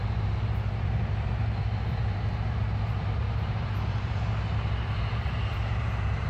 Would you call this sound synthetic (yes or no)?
yes